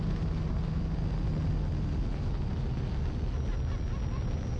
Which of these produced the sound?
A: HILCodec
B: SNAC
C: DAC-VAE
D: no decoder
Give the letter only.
D